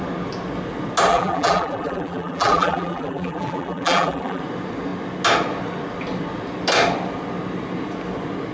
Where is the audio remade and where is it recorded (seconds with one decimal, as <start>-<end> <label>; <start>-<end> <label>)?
0.0-1.1 recorded; 1.1-4.4 remade; 4.4-8.5 recorded